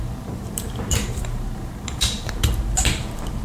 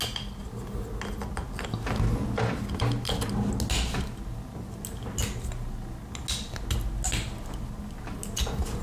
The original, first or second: second